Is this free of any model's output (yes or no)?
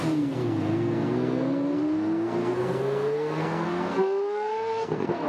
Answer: no